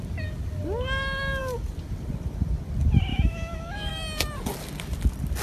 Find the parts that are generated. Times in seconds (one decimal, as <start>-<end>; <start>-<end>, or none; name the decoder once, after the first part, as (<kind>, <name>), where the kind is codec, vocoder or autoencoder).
3.1-3.9 (autoencoder, DAC-VAE)